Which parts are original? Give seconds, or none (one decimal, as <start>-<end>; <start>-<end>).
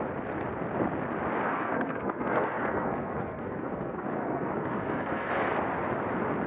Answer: 0.0-1.4; 5.3-6.5